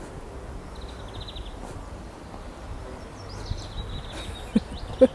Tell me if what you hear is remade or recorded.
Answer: recorded